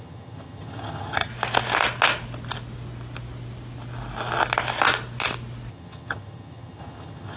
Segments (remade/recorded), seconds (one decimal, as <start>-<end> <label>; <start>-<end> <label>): 0.0-1.3 remade; 1.3-5.7 recorded; 5.7-7.4 remade